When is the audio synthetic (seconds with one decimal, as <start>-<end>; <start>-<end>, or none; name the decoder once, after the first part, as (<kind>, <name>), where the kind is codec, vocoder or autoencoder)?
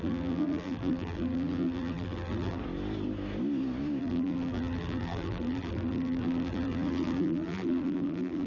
0.0-2.6 (vocoder, BigVGAN v2); 4.0-8.5